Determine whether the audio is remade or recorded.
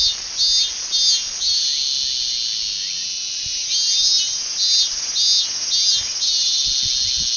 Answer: recorded